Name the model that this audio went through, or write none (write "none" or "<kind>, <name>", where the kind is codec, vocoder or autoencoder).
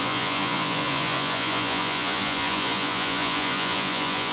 vocoder, Vocos